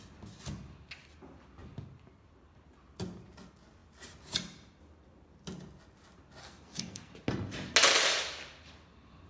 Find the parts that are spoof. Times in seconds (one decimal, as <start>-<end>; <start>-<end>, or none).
6.4-7.1